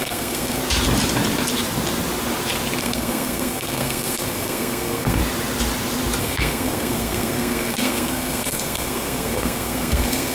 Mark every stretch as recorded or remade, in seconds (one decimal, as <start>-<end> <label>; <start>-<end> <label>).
0.0-0.6 remade; 0.6-2.8 recorded; 2.8-5.2 remade; 5.2-6.2 recorded; 6.2-10.3 remade